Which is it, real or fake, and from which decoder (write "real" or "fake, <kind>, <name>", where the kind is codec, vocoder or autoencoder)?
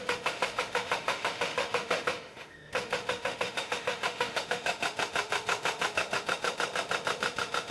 fake, autoencoder, DAC-VAE